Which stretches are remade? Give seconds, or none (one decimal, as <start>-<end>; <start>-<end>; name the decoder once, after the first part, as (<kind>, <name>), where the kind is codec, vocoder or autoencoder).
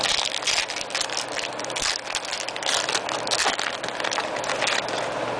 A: none